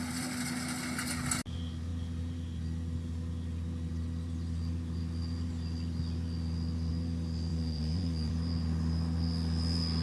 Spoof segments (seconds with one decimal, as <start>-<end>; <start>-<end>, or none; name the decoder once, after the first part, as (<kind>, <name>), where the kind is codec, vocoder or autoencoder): 7.5-8.3 (vocoder, Vocos)

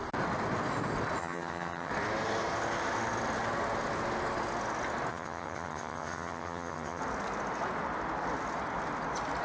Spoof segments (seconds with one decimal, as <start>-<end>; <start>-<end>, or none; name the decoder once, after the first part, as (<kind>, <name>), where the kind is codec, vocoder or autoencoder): 1.2-1.9 (vocoder, HiFi-GAN); 5.1-7.0

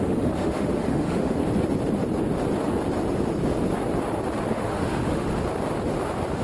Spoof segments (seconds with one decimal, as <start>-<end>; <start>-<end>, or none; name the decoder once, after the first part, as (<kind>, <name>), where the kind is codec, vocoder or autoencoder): 0.0-1.4 (autoencoder, DAC-VAE); 4.5-5.3

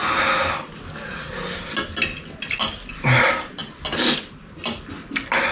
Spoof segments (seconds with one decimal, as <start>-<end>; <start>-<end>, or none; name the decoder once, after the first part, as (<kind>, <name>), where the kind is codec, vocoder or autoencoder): none

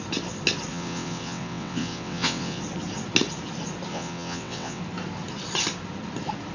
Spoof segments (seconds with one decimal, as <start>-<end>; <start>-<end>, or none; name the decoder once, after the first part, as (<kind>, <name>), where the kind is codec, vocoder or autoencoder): 0.7-2.6 (vocoder, WaveNeXt); 3.9-4.8

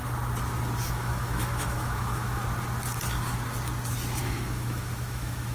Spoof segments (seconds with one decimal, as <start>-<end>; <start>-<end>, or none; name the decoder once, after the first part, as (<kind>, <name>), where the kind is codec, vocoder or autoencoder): 0.9-2.4 (autoencoder, DAC-VAE); 4.2-5.5

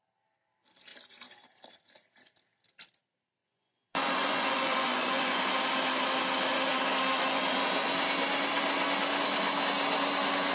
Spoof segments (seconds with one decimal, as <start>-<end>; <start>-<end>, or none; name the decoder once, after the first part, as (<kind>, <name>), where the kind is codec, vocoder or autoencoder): 3.4-5.4 (vocoder, Vocos)